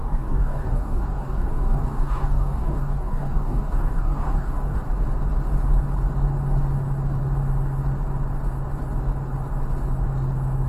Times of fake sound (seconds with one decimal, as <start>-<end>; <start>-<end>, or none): 0.0-4.8